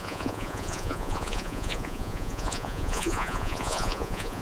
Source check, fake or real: fake